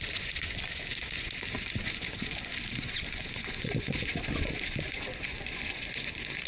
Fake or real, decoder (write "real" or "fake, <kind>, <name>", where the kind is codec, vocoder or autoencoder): fake, vocoder, Vocos